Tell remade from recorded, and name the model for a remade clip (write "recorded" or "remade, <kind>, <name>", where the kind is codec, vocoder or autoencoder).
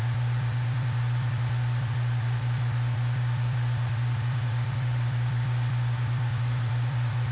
remade, vocoder, BigVGAN v2